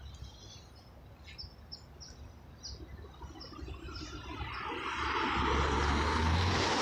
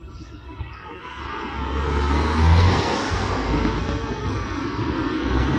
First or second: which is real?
first